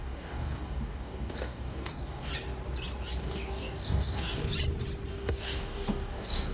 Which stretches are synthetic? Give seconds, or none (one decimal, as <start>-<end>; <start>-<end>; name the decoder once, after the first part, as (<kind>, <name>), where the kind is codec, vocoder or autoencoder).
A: 0.0-2.3 (codec, DAC); 3.2-4.4; 5.1-6.5